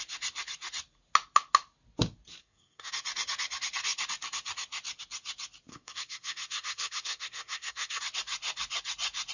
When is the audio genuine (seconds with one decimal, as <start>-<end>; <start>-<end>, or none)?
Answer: 0.0-2.4; 2.9-5.7; 8.0-9.3